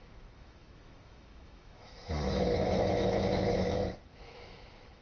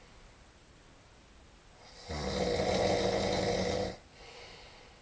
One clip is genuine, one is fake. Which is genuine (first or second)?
second